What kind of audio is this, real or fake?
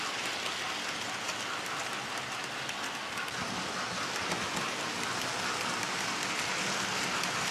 real